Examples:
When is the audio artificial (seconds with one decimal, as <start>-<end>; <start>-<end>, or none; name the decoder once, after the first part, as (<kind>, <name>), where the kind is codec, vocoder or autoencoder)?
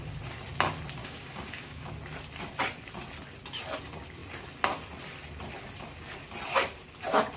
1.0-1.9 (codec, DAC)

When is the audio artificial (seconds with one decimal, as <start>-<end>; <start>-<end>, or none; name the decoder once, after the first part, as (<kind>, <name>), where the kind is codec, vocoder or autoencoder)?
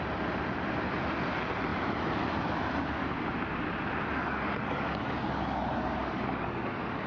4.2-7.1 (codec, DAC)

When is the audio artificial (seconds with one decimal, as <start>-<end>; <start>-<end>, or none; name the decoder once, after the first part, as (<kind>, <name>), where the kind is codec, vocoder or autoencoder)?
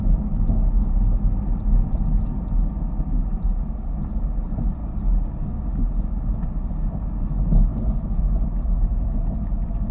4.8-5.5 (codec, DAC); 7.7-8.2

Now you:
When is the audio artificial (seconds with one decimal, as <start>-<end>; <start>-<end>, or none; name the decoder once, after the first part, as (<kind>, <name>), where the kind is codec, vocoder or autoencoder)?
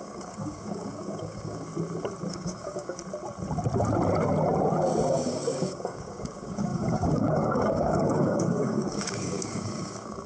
0.0-1.7 (codec, DAC); 2.3-3.0; 5.1-10.3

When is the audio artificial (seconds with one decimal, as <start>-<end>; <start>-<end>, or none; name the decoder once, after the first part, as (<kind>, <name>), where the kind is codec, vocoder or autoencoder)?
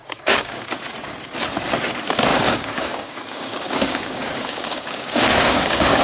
0.0-0.7 (codec, DAC); 2.3-6.0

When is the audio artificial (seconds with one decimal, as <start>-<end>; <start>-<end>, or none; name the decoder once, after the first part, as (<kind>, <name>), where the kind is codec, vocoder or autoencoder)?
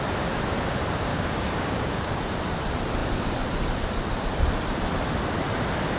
1.1-2.1 (codec, DAC)